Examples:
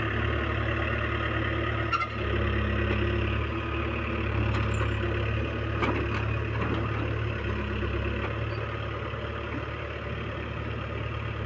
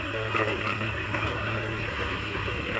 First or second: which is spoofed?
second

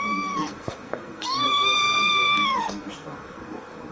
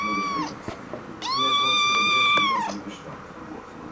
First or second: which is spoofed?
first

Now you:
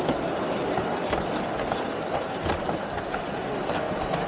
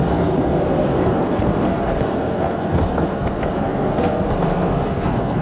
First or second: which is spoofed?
second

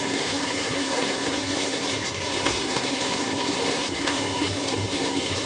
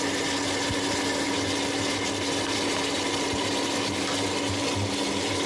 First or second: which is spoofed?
first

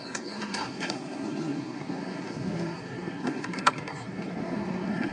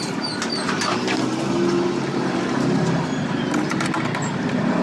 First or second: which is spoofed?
first